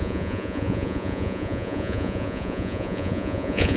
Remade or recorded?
remade